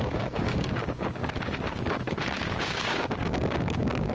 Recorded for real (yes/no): no